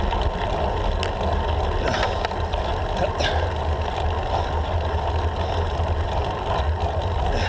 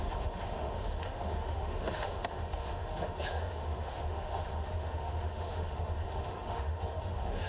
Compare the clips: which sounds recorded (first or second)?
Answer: first